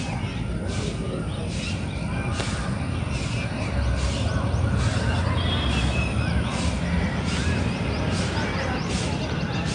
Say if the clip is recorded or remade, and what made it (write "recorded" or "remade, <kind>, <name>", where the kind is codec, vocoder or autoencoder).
recorded